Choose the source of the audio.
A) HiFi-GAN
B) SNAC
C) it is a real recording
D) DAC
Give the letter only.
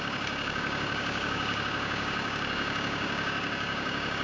D